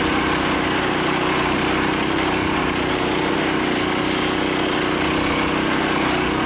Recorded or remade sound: recorded